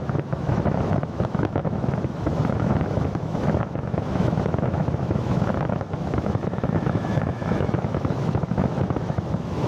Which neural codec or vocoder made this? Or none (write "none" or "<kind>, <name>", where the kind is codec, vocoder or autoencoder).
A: autoencoder, DAC-VAE